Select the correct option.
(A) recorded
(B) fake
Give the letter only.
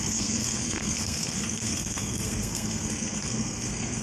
B